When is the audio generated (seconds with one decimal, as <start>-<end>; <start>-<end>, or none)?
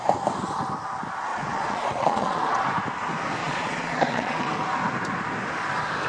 1.3-2.6; 3.4-4.5